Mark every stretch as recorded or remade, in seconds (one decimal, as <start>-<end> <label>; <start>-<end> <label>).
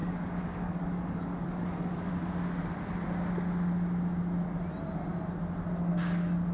0.0-2.1 remade; 2.1-6.5 recorded